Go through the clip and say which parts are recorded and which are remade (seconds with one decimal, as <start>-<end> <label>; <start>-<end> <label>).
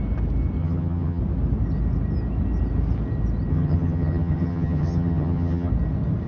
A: 0.0-0.6 recorded; 0.6-1.2 remade; 1.2-3.5 recorded; 3.5-5.7 remade; 5.7-6.3 recorded